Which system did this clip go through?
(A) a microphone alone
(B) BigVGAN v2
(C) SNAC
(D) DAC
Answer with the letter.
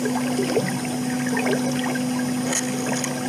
A